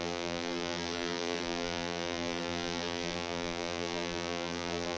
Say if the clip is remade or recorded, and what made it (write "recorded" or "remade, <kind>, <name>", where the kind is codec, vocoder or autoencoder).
remade, vocoder, BigVGAN v2